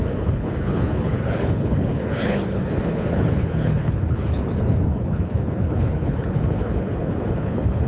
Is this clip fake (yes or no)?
yes